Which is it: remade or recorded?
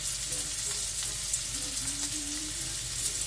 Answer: recorded